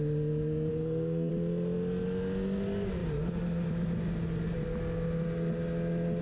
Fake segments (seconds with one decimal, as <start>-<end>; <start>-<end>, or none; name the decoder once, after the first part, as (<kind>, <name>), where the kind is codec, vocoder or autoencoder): 0.7-1.3 (codec, SNAC)